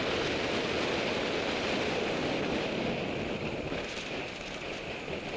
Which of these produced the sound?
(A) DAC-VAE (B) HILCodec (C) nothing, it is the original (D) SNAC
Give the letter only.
C